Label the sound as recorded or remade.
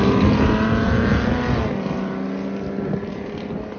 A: recorded